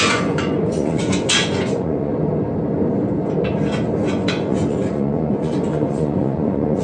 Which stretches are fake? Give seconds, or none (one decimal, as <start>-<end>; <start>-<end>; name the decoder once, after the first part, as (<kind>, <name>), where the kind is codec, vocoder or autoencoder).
0.0-2.1 (vocoder, Vocos); 4.1-6.8